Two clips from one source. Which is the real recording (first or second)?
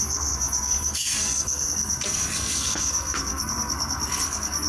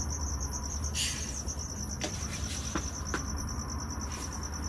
second